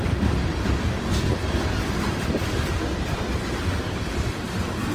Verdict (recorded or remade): recorded